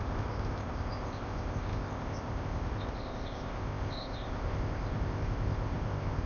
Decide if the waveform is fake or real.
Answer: fake